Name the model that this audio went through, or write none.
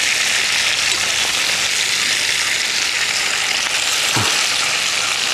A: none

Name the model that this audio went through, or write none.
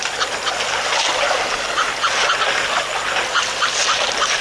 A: none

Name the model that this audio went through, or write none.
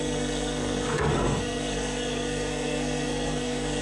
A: codec, SNAC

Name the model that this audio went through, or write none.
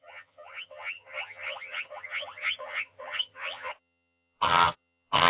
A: vocoder, HiFi-GAN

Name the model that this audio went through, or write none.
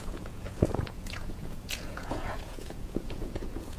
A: vocoder, Vocos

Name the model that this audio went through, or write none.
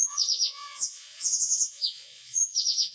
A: vocoder, Vocos